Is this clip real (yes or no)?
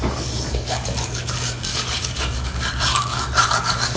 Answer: no